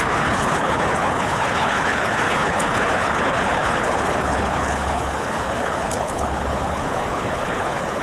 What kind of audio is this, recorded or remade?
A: remade